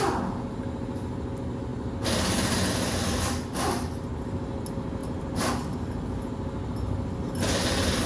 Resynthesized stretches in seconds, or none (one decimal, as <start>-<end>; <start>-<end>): none